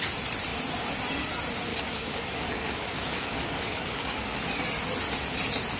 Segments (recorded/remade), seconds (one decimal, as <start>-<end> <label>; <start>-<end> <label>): 0.0-1.7 recorded; 1.7-4.4 remade; 4.4-5.8 recorded